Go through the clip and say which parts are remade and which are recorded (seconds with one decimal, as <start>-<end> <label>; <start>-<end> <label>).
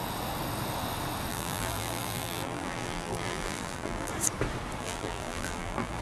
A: 0.0-1.3 recorded; 1.3-4.1 remade; 4.1-4.8 recorded; 4.8-6.0 remade